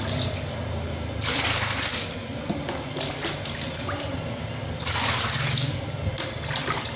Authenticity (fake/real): real